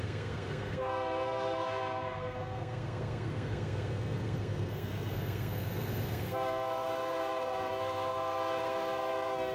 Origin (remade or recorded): remade